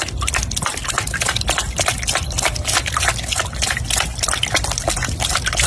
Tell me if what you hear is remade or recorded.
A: recorded